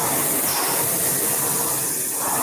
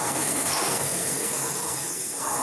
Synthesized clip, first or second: second